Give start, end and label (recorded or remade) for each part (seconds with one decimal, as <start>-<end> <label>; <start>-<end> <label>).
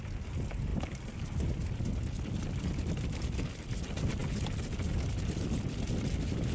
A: 0.0-6.5 recorded